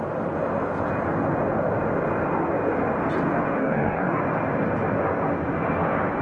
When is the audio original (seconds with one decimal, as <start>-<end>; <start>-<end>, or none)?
0.0-3.6; 4.2-6.2